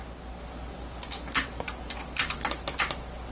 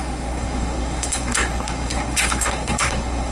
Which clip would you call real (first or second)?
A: first